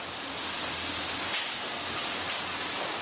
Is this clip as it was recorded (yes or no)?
yes